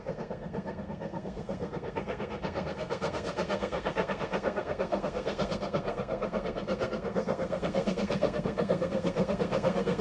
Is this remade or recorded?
remade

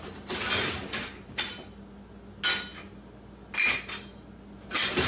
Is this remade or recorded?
recorded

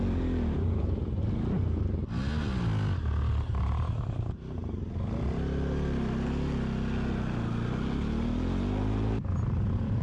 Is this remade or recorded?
recorded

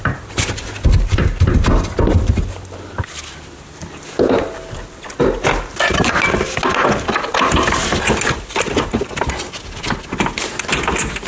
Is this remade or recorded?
recorded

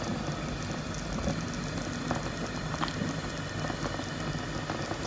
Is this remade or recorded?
recorded